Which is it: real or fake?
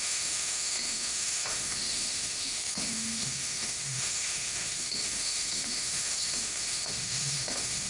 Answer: fake